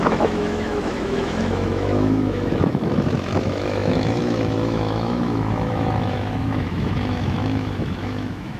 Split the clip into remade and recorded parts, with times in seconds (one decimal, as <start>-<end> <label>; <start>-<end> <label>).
0.0-8.6 remade